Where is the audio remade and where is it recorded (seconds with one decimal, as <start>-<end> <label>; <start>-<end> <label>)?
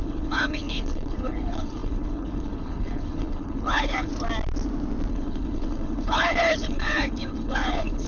0.0-4.1 remade; 4.1-5.1 recorded; 5.1-8.1 remade